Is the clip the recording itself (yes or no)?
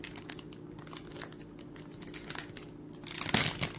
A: yes